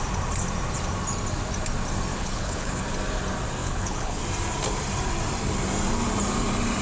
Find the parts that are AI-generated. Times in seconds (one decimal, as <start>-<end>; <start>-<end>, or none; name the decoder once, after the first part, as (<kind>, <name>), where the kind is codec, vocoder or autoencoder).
2.1-2.8 (codec, HILCodec); 3.6-4.2